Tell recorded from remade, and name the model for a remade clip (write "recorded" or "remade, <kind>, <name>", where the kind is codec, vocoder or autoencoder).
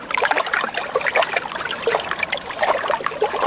recorded